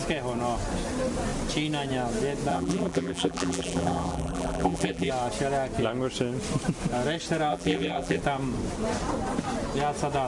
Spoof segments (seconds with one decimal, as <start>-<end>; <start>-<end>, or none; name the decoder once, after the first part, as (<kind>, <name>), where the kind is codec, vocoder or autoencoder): 2.5-5.1 (vocoder, BigVGAN v2); 7.5-8.2